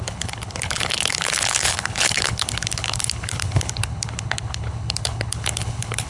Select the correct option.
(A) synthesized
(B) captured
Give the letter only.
A